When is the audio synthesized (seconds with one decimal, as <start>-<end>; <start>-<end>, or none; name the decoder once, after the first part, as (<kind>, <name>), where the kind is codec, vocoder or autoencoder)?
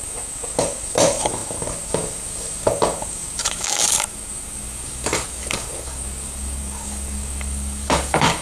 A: 0.0-8.4 (codec, DAC)